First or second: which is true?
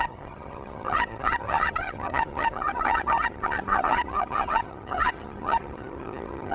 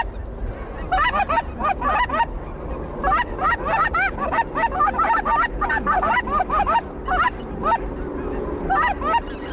second